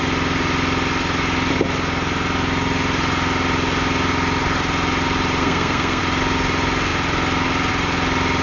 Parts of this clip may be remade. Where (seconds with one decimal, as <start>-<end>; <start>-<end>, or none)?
5.4-6.0